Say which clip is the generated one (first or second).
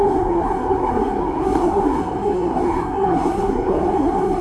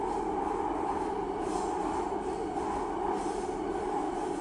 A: first